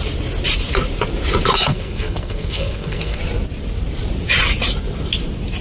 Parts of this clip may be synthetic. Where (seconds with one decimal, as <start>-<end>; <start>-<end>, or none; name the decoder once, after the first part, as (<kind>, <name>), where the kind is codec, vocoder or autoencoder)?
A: 1.7-3.2 (codec, SNAC)